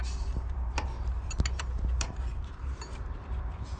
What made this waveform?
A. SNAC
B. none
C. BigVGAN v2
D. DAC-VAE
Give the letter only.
C